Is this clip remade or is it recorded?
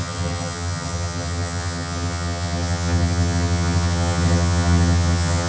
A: remade